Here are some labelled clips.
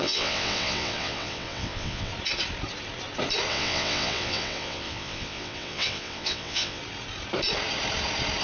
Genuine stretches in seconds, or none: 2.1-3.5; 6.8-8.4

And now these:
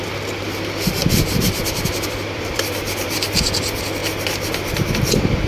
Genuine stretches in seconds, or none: 0.0-1.0; 3.3-5.5

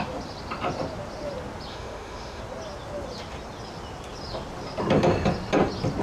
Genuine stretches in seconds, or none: 0.0-1.7; 2.4-6.0

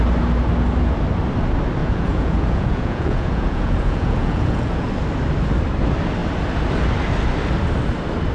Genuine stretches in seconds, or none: 0.0-1.8; 4.9-8.3

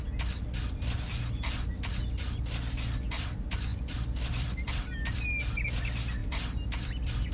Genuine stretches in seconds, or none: 0.0-3.7; 4.7-7.3